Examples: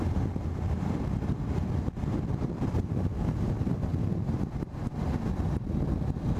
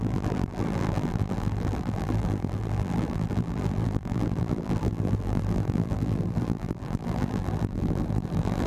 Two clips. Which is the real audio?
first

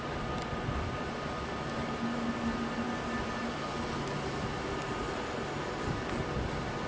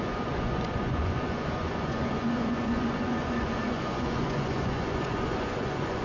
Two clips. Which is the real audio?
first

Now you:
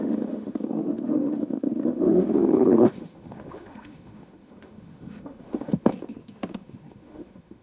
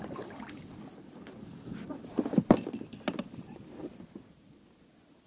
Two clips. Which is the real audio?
second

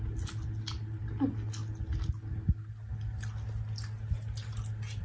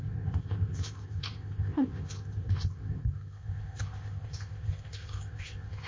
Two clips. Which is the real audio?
first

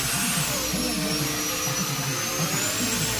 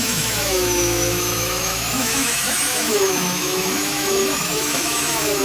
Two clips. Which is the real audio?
first